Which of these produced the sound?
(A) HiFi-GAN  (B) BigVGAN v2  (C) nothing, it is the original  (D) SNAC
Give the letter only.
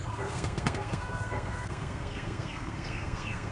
D